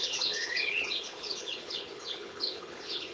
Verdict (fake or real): fake